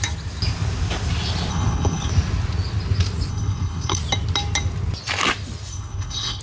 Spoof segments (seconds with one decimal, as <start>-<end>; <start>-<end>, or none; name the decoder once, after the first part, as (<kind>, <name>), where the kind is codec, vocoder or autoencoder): 1.5-2.1 (codec, HILCodec); 3.3-4.0; 5.7-6.4